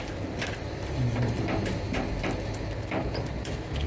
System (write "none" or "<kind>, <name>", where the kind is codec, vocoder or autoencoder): none